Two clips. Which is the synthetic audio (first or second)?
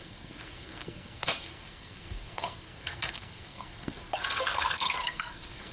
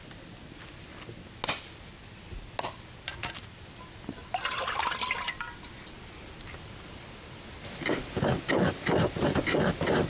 first